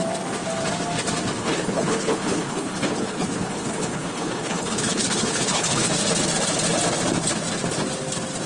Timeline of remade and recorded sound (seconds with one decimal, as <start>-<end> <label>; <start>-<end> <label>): 0.0-1.4 recorded; 1.4-5.9 remade; 5.9-8.5 recorded